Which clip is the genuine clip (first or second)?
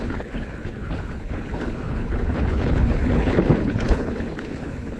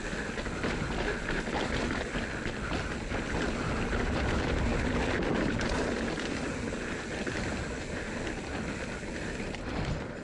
second